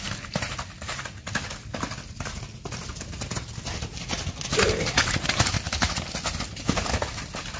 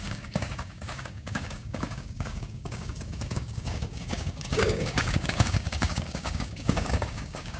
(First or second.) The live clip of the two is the first